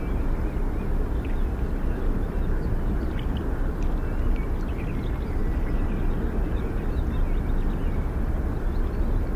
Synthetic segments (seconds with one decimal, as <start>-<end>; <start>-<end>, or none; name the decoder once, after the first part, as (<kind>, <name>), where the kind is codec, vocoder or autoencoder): none